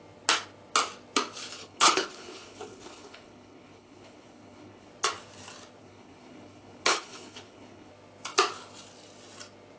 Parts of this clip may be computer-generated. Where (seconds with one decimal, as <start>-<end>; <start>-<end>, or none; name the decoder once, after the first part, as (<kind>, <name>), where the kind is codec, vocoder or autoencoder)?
1.6-4.9 (codec, HILCodec); 5.8-7.9